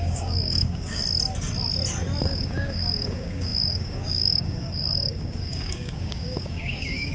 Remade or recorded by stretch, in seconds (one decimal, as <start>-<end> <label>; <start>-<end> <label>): 0.0-1.0 remade; 1.0-2.2 recorded; 2.2-7.1 remade